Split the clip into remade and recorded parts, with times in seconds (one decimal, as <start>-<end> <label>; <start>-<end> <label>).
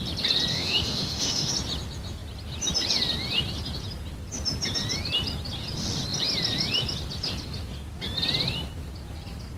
0.0-0.5 recorded; 0.5-1.5 remade; 1.5-9.6 recorded